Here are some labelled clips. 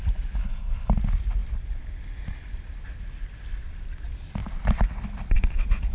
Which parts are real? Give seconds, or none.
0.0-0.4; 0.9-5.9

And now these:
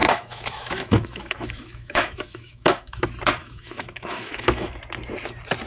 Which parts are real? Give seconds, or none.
3.0-3.4; 4.8-5.7

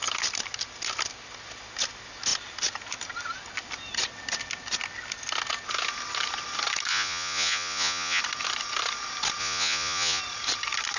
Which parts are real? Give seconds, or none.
0.0-6.9; 8.2-9.4; 10.2-11.0

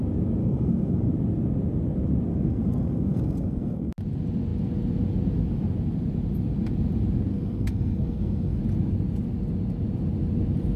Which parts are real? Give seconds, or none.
0.0-0.4; 1.1-2.3; 3.9-7.3; 8.6-10.8

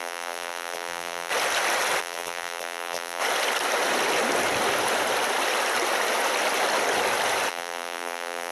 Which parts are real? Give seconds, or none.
1.3-2.0; 3.2-7.5

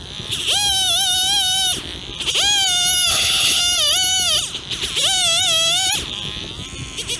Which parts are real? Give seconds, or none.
0.0-3.1; 3.6-7.2

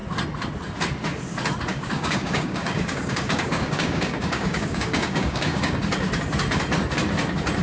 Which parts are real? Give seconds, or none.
0.0-1.7; 5.8-7.6

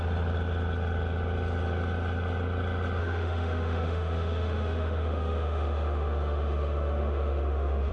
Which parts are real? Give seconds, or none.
0.0-3.0